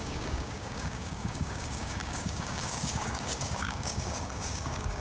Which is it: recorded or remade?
remade